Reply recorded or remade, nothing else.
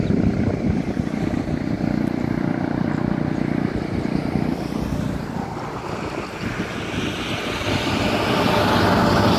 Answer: recorded